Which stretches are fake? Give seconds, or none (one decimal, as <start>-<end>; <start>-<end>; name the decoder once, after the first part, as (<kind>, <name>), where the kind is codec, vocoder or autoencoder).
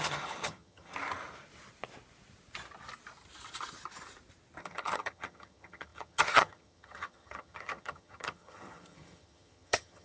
0.0-0.9 (vocoder, HiFi-GAN); 4.6-10.0